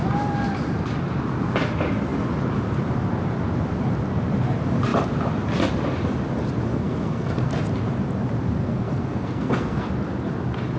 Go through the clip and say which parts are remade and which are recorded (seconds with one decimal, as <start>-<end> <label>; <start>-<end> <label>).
0.0-6.7 recorded; 6.7-7.5 remade; 7.5-8.6 recorded; 8.6-9.9 remade; 9.9-10.8 recorded